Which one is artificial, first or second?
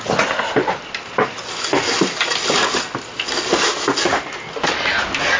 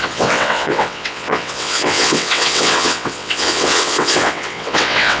second